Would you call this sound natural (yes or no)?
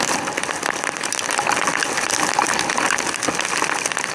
yes